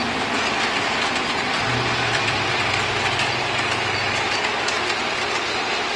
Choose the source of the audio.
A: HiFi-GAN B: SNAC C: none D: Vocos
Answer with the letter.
C